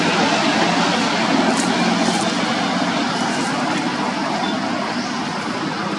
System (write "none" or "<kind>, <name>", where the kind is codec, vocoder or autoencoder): none